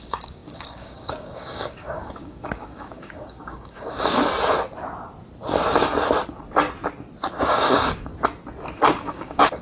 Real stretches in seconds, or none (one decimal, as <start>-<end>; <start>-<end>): 4.2-7.4; 8.1-8.9